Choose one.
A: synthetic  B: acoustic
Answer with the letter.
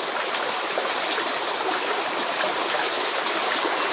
B